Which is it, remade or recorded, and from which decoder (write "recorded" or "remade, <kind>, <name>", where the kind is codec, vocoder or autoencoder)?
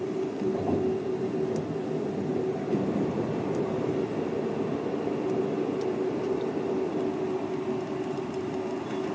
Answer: recorded